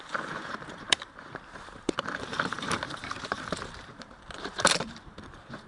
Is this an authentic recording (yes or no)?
no